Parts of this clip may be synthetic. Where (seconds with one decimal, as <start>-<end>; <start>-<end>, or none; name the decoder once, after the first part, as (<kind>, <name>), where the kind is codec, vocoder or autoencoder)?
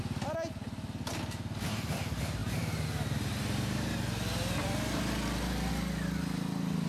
none